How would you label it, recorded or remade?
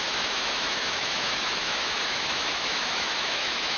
remade